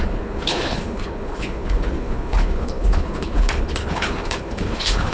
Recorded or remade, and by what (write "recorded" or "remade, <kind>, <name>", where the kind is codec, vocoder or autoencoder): remade, codec, HILCodec